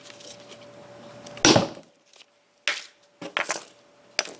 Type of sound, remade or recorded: recorded